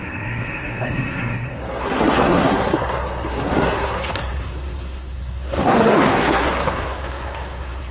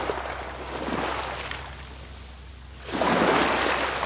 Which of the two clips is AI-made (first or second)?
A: first